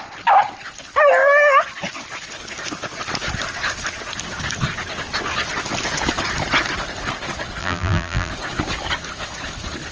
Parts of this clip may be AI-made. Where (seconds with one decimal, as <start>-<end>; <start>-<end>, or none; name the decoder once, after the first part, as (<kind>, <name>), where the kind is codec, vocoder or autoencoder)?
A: 7.6-8.3 (vocoder, BigVGAN v2)